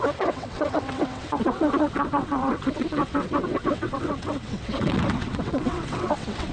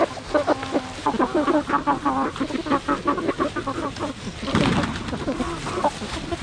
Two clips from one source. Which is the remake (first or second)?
first